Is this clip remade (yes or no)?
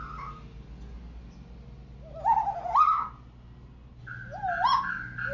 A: no